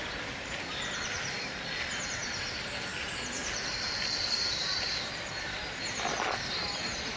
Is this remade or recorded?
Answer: recorded